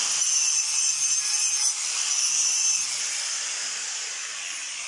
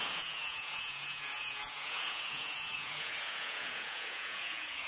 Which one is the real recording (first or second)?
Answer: first